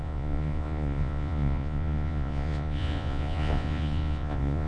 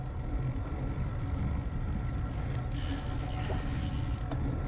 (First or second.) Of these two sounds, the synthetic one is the first